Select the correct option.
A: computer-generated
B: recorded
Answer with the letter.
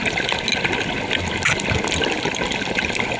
B